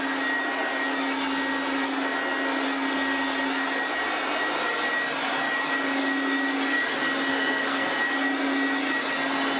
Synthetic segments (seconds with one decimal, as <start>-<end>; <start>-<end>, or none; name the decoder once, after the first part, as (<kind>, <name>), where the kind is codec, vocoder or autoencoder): 7.3-7.9 (codec, SNAC)